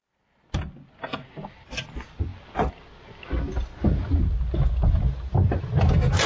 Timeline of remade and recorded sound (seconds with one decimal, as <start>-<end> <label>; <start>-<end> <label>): 0.0-6.3 recorded